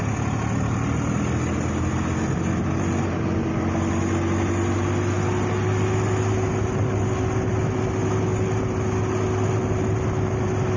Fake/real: real